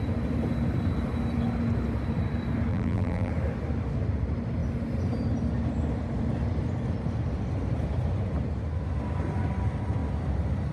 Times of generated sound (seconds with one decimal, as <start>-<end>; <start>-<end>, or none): 2.7-3.3